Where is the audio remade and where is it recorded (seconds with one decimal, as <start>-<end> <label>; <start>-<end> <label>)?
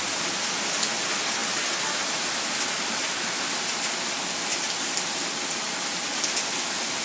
0.0-7.0 recorded